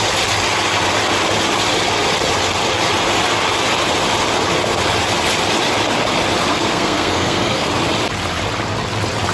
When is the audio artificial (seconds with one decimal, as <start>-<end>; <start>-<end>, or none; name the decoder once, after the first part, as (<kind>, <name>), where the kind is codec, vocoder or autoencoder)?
6.5-7.7 (codec, SNAC)